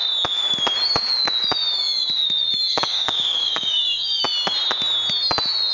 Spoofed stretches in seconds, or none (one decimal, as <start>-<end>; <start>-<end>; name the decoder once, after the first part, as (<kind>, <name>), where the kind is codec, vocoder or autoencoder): 2.7-4.2 (codec, DAC)